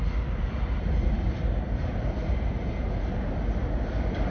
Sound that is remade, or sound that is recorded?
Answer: recorded